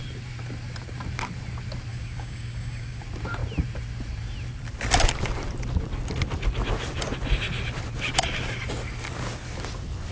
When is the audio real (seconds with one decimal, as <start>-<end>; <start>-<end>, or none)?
0.0-1.9; 3.0-10.1